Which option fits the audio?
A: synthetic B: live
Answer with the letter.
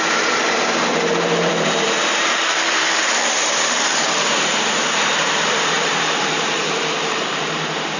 A